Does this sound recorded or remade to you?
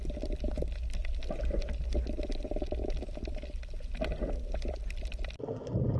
recorded